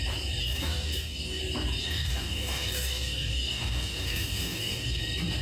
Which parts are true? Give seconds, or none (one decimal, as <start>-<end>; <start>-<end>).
0.0-0.4; 1.4-1.8; 5.0-5.4